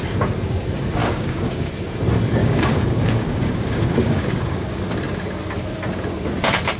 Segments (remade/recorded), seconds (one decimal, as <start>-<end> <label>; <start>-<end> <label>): 0.0-1.0 recorded; 1.0-1.7 remade; 1.7-2.4 recorded; 2.4-4.9 remade; 4.9-6.8 recorded